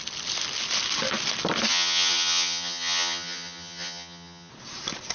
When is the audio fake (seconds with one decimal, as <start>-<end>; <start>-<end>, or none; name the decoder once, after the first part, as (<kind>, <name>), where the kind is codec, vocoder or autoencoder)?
1.7-4.5 (vocoder, HiFi-GAN)